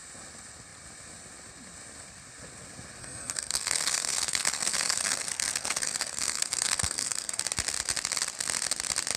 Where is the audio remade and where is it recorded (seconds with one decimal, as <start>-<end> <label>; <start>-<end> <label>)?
0.0-3.0 recorded; 3.0-7.4 remade; 7.4-9.2 recorded